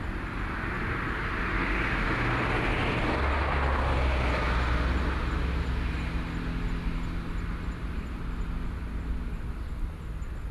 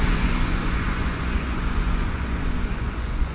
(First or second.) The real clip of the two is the first